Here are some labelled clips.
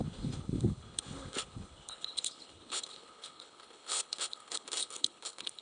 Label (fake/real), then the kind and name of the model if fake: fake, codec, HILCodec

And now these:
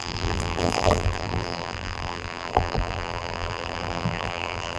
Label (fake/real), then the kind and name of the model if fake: fake, vocoder, BigVGAN v2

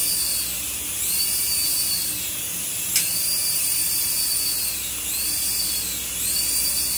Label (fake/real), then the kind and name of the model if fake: real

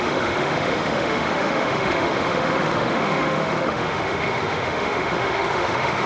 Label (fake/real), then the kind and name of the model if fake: fake, autoencoder, DAC-VAE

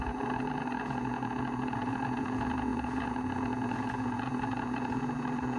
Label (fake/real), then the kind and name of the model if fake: fake, vocoder, Vocos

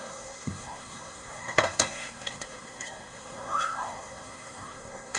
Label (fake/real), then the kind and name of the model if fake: fake, codec, SNAC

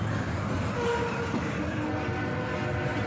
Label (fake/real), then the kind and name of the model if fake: real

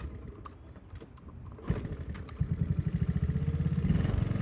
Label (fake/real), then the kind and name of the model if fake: real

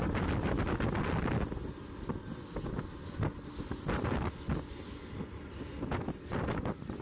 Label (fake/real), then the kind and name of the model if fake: real